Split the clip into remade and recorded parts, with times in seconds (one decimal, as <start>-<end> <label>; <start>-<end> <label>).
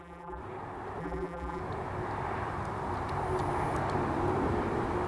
0.0-0.4 remade; 0.4-1.0 recorded; 1.0-1.6 remade; 1.6-5.1 recorded